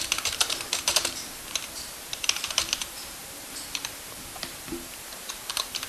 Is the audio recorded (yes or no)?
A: no